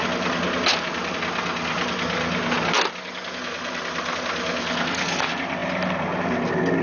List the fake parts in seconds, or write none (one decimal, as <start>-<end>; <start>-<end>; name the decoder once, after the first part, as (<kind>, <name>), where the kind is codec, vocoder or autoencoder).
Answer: none